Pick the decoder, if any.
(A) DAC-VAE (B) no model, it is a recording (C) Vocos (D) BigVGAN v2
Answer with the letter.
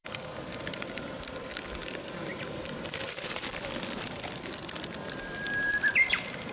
D